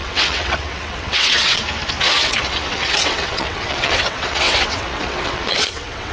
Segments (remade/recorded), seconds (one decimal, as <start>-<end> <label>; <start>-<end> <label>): 0.0-1.6 remade; 1.6-2.2 recorded; 2.2-6.1 remade